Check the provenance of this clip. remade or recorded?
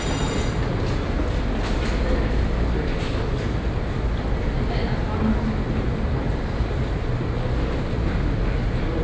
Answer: recorded